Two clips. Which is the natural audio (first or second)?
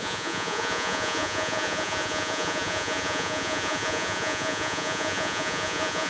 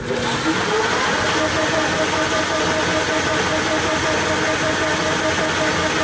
second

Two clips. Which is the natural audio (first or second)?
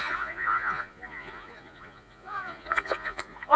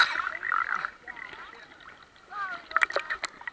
second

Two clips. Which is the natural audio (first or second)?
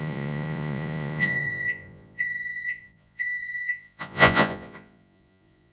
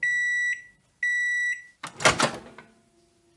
second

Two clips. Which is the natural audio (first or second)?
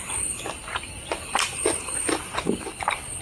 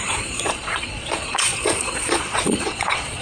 first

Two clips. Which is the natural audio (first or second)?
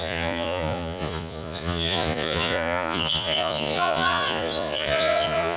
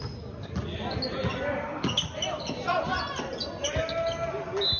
second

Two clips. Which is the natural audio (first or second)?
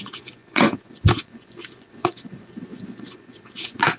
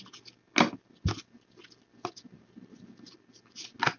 second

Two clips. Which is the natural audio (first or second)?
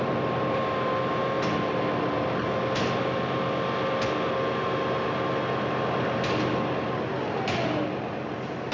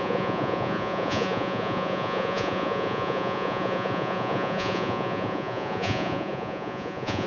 first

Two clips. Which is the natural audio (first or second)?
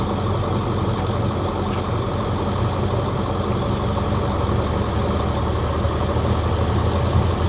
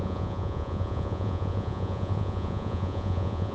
first